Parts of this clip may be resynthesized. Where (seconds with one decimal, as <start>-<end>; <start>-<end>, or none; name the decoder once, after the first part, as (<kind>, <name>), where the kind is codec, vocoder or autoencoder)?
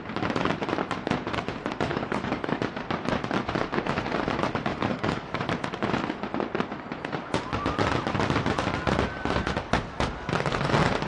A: 1.9-2.6 (codec, DAC); 4.7-5.4